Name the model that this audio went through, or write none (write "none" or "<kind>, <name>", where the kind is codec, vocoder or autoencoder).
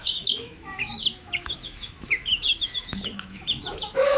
autoencoder, DAC-VAE